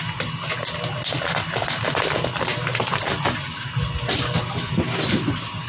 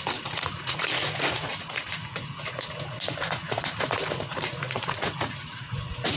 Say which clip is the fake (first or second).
second